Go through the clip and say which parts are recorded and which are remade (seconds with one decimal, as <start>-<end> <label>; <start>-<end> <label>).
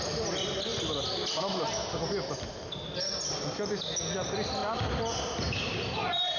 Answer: 0.0-6.4 recorded